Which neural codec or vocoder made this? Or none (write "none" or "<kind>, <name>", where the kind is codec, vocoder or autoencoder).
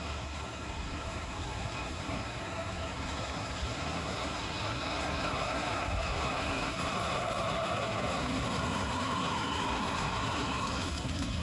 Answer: codec, SNAC